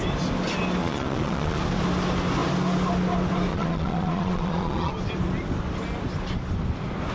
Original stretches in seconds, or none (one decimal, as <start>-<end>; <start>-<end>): 0.0-0.8; 1.6-3.5; 4.9-7.1